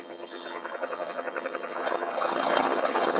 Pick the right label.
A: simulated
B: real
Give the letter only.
A